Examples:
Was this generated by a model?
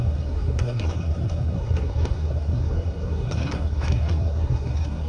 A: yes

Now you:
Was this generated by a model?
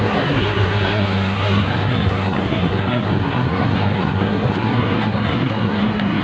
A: yes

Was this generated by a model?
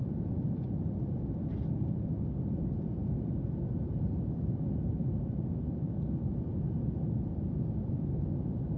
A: no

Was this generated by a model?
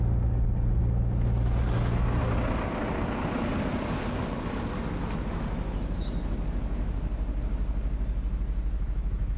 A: no